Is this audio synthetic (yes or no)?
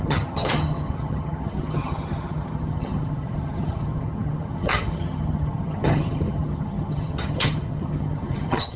yes